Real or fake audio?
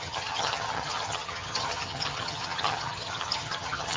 fake